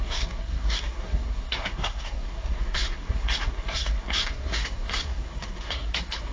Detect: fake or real fake